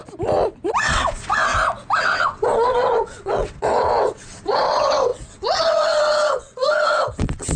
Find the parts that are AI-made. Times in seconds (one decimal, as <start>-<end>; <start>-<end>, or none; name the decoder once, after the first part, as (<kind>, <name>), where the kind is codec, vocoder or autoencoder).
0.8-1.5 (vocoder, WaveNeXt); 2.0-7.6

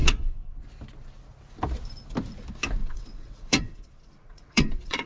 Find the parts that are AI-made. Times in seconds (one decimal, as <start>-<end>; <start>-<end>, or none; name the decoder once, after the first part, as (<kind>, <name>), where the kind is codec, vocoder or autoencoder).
0.0-0.6 (vocoder, WaveNeXt); 2.8-5.1

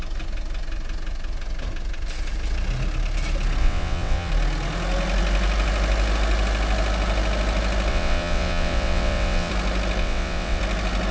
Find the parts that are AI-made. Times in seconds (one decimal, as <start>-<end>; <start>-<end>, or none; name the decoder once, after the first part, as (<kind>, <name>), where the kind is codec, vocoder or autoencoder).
3.6-4.3 (vocoder, WaveNeXt); 7.9-9.5; 10.0-10.6